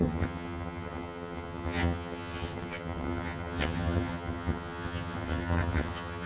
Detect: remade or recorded remade